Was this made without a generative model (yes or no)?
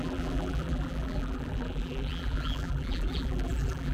no